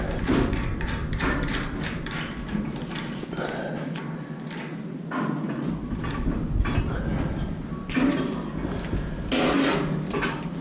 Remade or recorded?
recorded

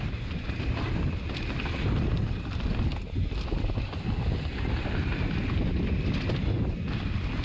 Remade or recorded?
recorded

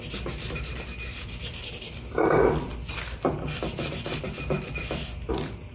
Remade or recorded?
recorded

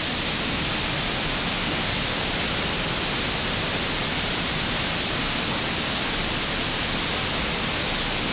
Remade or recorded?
remade